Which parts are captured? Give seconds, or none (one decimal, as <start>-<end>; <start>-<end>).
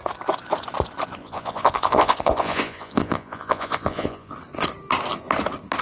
0.0-1.2; 4.3-5.8